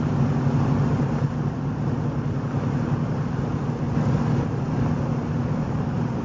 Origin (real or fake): real